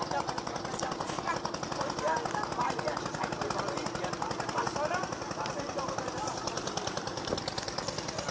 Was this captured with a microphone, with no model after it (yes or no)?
yes